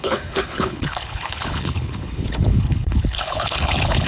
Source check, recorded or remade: remade